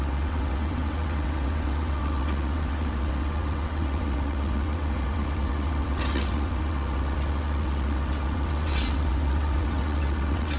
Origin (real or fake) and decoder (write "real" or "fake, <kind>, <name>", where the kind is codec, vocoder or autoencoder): fake, vocoder, WaveNeXt